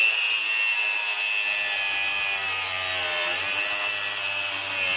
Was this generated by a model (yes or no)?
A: no